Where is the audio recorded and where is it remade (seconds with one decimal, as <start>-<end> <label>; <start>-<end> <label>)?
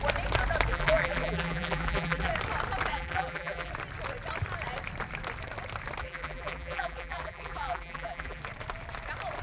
0.0-0.7 recorded; 0.7-2.3 remade; 2.3-2.9 recorded; 2.9-3.7 remade; 3.7-6.0 recorded; 6.0-8.4 remade; 8.4-9.4 recorded